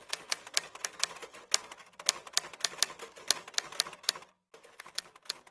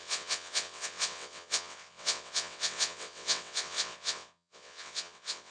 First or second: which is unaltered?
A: first